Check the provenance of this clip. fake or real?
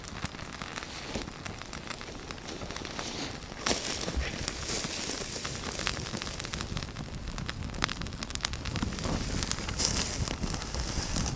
real